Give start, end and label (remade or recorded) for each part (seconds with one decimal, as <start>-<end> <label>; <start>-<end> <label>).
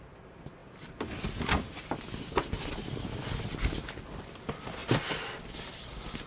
0.0-6.3 recorded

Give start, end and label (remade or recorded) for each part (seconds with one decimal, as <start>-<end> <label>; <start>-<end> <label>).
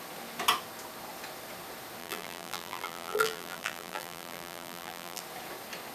0.0-2.0 recorded; 2.0-5.2 remade; 5.2-5.9 recorded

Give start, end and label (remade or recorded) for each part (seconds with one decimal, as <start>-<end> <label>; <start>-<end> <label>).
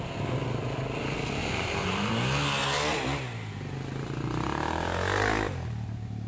0.0-1.4 recorded; 1.4-2.1 remade; 2.1-6.3 recorded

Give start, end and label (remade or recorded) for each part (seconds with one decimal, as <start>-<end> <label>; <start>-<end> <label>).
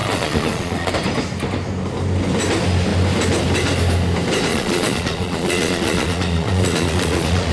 0.0-0.9 remade; 0.9-4.5 recorded; 4.5-7.5 remade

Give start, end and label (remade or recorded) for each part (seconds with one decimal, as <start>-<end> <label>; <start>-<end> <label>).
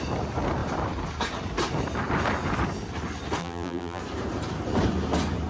0.0-3.4 recorded; 3.4-4.0 remade; 4.0-5.5 recorded